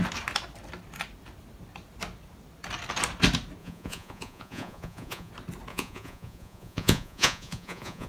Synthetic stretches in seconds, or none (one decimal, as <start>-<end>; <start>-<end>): 3.6-5.3; 5.7-8.1